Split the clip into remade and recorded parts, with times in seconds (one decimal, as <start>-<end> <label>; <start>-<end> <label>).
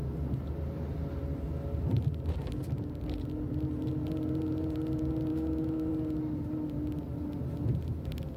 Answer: 0.0-5.3 recorded; 5.3-5.9 remade; 5.9-8.4 recorded